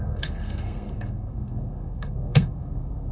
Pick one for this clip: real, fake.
fake